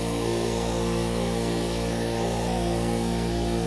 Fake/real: fake